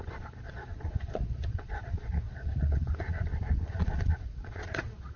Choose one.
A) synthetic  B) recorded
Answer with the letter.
A